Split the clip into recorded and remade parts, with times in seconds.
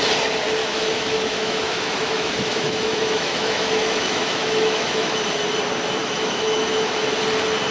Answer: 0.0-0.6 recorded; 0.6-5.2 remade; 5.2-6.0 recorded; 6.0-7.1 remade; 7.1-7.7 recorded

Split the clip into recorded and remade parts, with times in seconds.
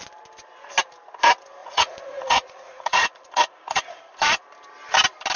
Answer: 0.0-1.6 recorded; 1.6-4.0 remade; 4.0-5.4 recorded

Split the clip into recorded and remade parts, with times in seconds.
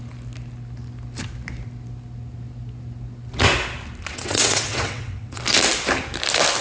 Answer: 0.0-4.1 recorded; 4.1-5.4 remade; 5.4-6.6 recorded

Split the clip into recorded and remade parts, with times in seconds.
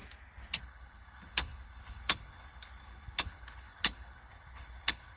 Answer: 0.0-0.6 recorded; 0.6-5.2 remade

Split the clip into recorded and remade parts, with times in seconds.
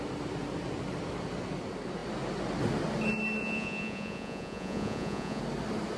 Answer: 0.0-3.4 recorded; 3.4-5.4 remade; 5.4-6.0 recorded